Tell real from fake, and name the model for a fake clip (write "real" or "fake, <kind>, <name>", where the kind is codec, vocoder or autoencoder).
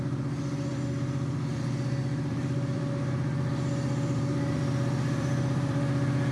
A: fake, vocoder, BigVGAN v2